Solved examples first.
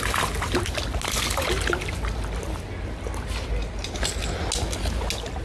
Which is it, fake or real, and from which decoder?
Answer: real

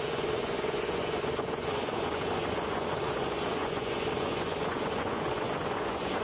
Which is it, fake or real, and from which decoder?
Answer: fake, vocoder, Vocos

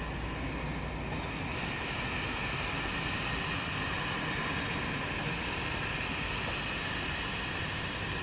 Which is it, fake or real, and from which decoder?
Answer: real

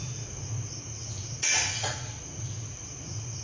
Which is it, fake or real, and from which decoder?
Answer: fake, vocoder, Vocos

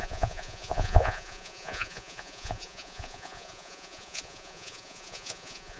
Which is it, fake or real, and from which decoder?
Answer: fake, vocoder, Vocos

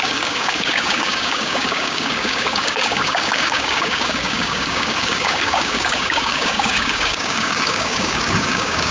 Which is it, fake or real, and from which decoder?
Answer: fake, codec, DAC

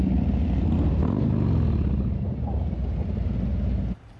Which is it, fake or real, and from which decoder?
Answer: real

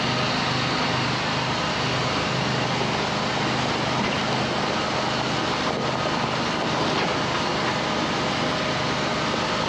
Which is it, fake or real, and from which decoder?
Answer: real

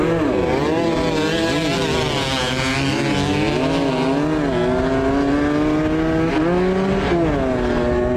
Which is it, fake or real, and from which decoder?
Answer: real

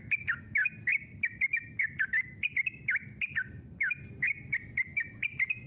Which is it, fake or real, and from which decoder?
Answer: real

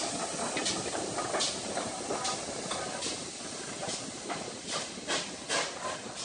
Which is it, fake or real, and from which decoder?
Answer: real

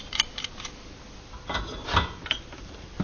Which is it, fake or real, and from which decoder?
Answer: real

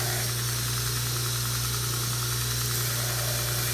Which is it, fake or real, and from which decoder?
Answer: real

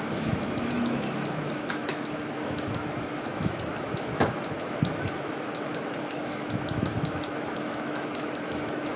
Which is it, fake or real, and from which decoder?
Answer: fake, autoencoder, DAC-VAE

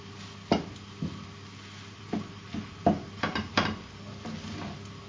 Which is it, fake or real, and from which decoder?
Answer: real